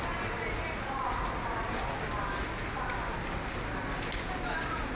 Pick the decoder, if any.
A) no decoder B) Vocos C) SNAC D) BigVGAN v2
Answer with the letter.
A